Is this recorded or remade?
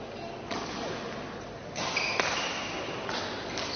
recorded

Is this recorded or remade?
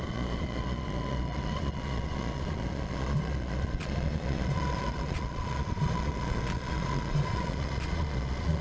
remade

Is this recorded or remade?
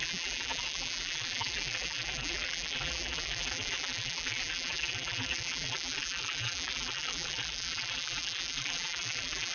remade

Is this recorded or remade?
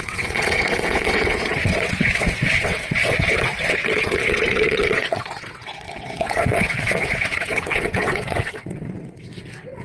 remade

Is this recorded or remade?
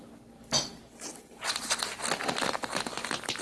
recorded